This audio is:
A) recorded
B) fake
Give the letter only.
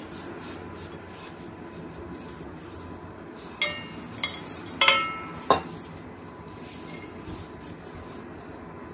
A